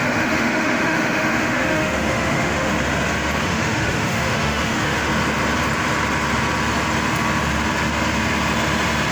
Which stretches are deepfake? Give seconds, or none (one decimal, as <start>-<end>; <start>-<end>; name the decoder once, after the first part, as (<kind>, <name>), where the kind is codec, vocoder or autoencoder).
0.0-2.7 (autoencoder, DAC-VAE); 3.4-5.1